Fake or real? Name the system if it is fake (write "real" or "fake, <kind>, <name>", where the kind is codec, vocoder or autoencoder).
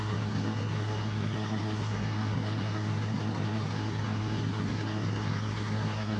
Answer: fake, codec, SNAC